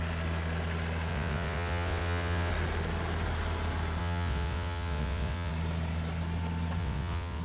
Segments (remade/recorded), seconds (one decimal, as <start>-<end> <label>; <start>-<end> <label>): 0.0-1.1 recorded; 1.1-2.5 remade; 2.5-4.0 recorded; 4.0-5.5 remade; 5.5-6.8 recorded; 6.8-7.4 remade